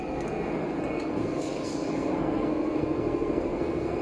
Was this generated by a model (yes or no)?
yes